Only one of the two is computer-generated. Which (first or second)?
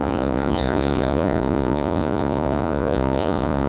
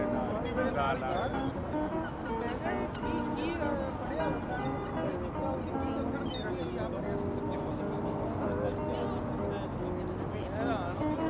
first